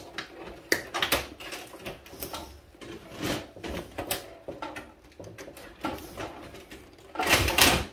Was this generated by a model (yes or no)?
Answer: no